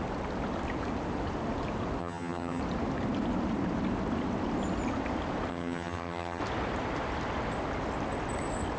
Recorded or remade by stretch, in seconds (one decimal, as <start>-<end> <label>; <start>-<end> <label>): 0.0-2.0 recorded; 2.0-2.6 remade; 2.6-5.5 recorded; 5.5-6.4 remade; 6.4-8.8 recorded